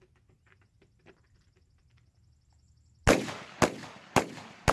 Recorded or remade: recorded